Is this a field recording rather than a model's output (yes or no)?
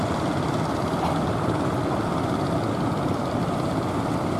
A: yes